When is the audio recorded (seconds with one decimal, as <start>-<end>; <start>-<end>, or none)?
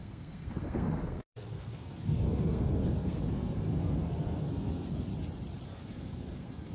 5.1-5.7